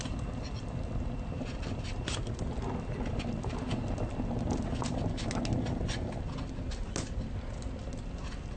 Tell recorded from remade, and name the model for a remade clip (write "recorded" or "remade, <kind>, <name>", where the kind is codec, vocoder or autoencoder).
recorded